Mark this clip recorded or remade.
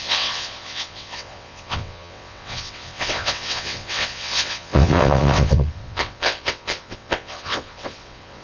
remade